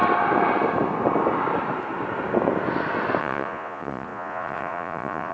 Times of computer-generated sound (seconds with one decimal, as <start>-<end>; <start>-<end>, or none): 3.2-5.3